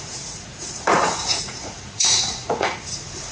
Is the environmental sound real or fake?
fake